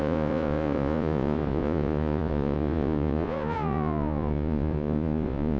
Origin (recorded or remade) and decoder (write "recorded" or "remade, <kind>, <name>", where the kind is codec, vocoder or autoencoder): remade, vocoder, Vocos